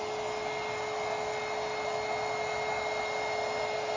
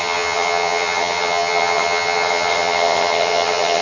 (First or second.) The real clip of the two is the first